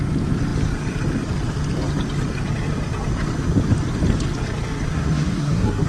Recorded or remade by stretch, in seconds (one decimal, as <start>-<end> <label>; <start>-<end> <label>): 0.0-4.9 recorded; 4.9-5.9 remade